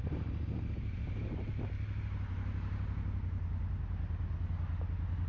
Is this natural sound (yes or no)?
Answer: yes